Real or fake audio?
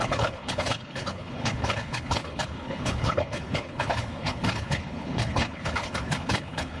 fake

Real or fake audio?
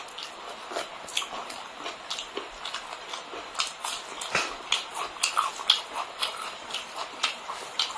real